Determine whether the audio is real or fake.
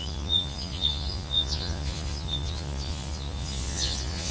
fake